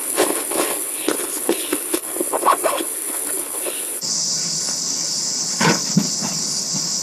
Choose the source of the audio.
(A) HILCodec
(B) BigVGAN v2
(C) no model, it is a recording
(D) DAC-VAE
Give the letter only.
A